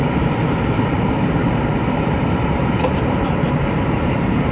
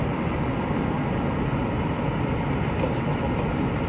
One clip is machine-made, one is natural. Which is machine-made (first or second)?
first